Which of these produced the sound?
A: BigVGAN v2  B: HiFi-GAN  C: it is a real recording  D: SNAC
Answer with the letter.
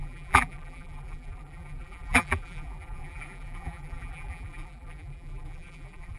A